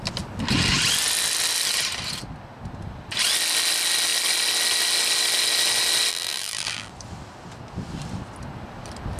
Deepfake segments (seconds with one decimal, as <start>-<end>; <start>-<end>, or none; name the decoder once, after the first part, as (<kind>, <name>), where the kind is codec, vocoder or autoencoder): 6.1-6.9 (vocoder, BigVGAN v2)